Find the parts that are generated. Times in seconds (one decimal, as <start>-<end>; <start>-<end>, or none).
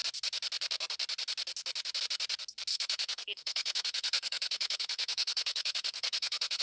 2.7-6.6